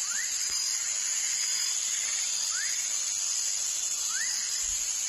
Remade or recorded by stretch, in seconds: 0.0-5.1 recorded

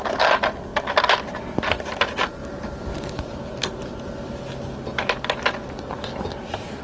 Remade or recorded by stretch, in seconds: 0.0-2.4 recorded; 2.4-5.1 remade; 5.1-5.6 recorded; 5.6-6.8 remade

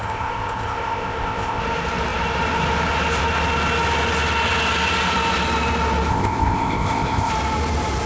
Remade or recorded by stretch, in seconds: 0.0-1.6 remade; 1.6-6.1 recorded; 6.1-7.3 remade; 7.3-8.1 recorded